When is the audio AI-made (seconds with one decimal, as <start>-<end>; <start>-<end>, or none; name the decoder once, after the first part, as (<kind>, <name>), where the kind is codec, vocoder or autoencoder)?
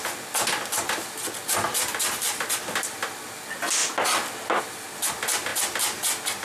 none